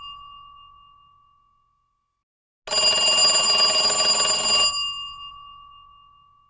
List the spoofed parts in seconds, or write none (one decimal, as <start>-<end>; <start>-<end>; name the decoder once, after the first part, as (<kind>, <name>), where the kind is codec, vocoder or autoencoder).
none